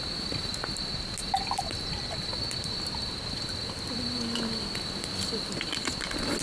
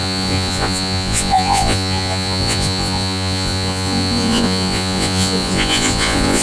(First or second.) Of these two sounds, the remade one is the second